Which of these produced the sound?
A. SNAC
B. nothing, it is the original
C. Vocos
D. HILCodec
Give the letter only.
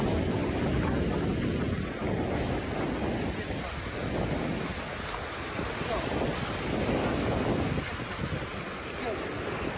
B